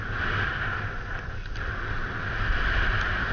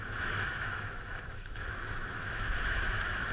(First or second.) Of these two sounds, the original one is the first